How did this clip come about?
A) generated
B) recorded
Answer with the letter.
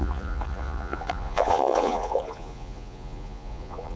A